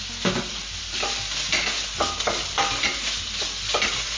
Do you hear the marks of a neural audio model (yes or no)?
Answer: no